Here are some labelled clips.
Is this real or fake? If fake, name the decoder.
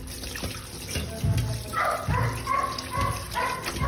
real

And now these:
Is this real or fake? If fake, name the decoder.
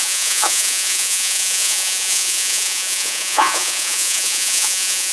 fake, vocoder, Vocos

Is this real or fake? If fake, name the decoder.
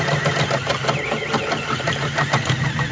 real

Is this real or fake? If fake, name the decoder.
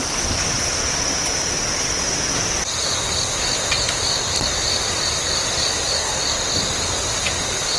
real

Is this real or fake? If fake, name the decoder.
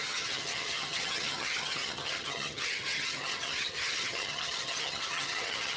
fake, vocoder, HiFi-GAN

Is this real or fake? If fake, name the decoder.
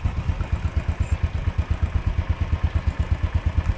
real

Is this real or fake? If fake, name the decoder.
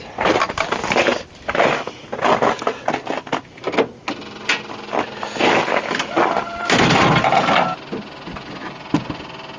real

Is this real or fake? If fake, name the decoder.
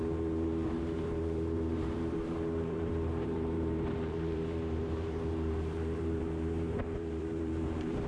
fake, vocoder, BigVGAN v2